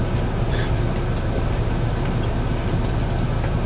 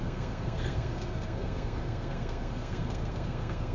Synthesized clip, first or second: second